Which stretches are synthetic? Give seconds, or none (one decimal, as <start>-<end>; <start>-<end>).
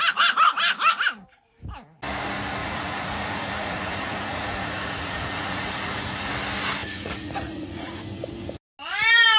2.6-6.3; 6.8-8.0